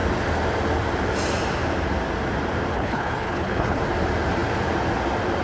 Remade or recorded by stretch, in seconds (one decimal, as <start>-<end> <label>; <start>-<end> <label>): 0.0-2.7 recorded; 2.7-3.8 remade; 3.8-5.4 recorded